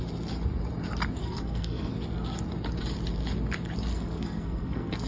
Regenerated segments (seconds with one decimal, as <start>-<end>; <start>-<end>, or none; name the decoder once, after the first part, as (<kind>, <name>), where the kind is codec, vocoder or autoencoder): 1.2-1.9 (codec, SNAC); 3.9-5.1